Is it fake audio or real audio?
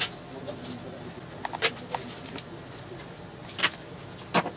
real